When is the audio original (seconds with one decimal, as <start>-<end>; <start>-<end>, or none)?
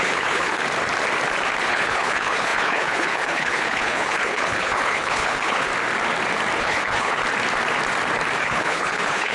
0.6-1.6; 5.7-6.6; 7.2-8.4